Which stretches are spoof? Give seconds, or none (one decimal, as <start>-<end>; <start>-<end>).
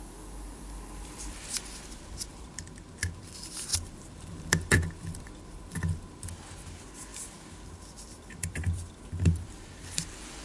2.3-3.3; 3.7-6.2; 7.1-10.0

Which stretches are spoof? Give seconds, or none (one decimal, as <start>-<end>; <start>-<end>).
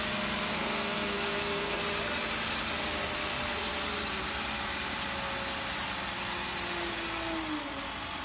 0.5-1.8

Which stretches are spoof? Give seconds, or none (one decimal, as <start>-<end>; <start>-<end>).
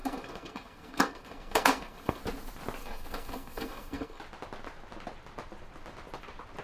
0.0-2.2; 2.8-4.2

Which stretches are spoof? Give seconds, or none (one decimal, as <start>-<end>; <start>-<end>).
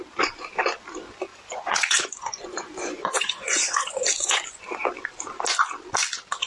1.3-4.6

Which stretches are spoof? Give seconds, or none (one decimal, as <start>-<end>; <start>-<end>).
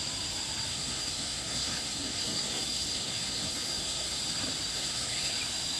0.7-4.2; 4.7-5.3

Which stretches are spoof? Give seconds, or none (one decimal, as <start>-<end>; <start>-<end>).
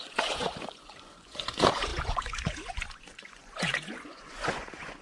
0.0-5.0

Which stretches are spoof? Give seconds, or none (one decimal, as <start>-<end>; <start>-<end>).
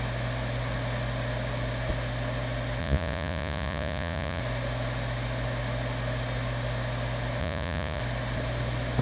2.8-4.4; 7.4-8.0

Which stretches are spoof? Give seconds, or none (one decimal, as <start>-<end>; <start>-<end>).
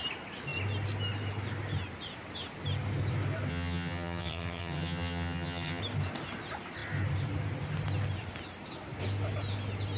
3.5-5.8